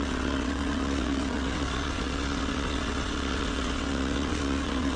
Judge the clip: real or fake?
fake